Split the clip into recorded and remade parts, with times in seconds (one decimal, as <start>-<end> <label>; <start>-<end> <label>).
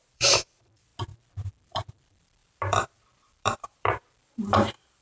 0.0-0.9 remade; 0.9-1.6 recorded; 1.6-5.0 remade